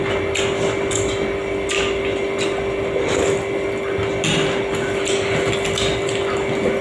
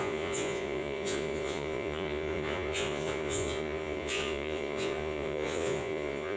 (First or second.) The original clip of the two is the first